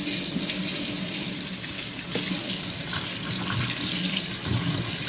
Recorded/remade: recorded